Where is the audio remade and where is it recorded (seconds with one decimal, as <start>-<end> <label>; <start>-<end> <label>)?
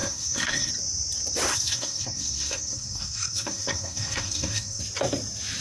0.0-0.7 remade; 0.7-1.5 recorded; 1.5-4.8 remade; 4.8-5.6 recorded